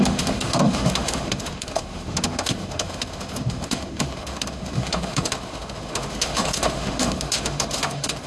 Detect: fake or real fake